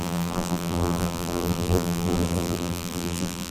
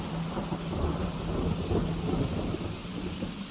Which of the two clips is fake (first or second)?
first